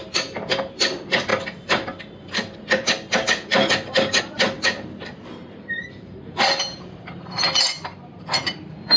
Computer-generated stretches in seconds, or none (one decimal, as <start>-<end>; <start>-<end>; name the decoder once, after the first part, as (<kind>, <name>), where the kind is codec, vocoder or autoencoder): 0.0-1.3 (vocoder, BigVGAN v2); 4.2-9.0